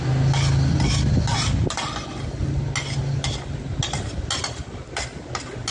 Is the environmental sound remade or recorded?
recorded